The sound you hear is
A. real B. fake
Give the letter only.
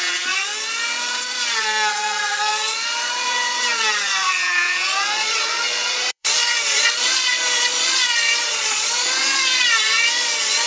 B